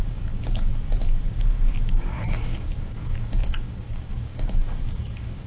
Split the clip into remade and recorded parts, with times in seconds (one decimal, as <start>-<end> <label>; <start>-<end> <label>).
0.0-0.7 remade; 0.7-1.3 recorded; 1.3-5.5 remade